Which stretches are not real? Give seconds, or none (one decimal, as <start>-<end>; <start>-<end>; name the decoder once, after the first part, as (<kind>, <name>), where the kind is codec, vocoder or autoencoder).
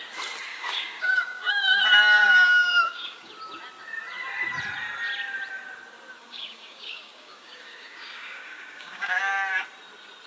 0.5-1.8 (codec, DAC); 2.2-3.3; 6.2-9.3